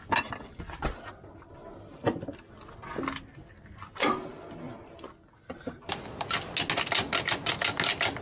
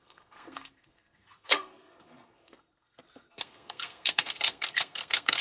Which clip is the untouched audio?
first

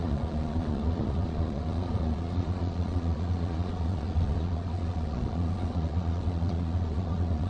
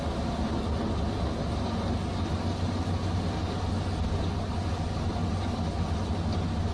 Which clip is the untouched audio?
second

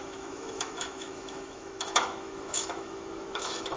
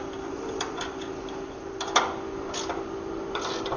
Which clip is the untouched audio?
second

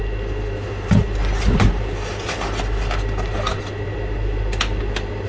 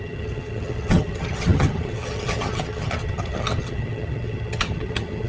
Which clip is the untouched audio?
first